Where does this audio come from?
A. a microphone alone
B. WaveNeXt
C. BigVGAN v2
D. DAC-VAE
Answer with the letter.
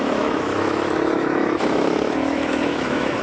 D